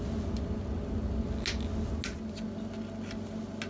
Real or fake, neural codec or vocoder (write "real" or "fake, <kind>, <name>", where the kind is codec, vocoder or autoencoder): real